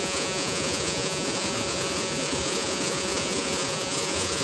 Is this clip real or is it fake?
fake